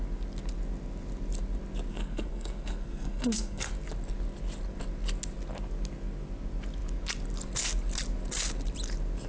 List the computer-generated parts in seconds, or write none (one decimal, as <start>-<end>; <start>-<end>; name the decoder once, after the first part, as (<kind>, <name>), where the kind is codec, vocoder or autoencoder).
1.9-3.7 (codec, SNAC)